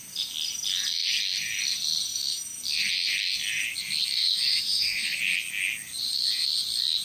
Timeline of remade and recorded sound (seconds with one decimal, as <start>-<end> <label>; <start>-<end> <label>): 0.0-2.1 recorded; 2.1-2.6 remade; 2.6-4.2 recorded; 4.2-5.2 remade; 5.2-7.0 recorded